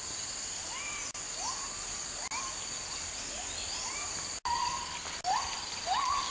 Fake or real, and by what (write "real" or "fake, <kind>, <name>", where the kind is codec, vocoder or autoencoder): real